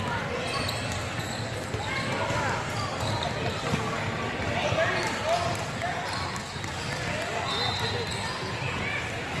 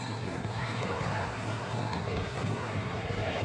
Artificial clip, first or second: second